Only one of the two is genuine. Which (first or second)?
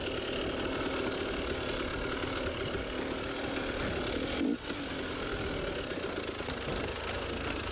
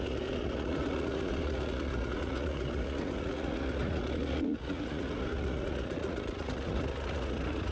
first